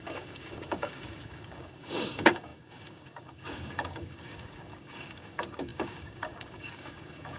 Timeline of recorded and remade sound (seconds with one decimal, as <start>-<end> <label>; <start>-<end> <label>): 0.0-7.4 remade